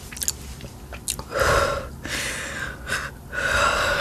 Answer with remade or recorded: recorded